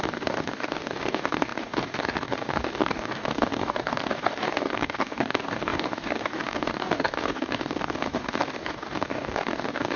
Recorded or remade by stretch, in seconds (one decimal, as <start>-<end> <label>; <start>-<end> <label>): 0.0-10.0 remade

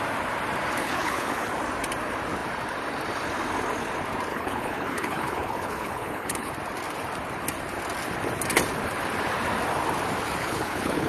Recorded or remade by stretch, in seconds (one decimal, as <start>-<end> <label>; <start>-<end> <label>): 0.0-0.8 recorded; 0.8-1.5 remade; 1.5-4.3 recorded; 4.3-6.5 remade; 6.5-10.4 recorded; 10.4-11.1 remade